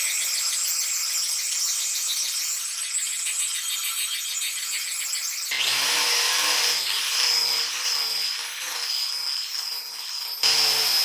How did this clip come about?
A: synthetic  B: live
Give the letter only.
B